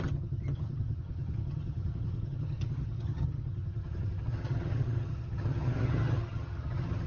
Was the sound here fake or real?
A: fake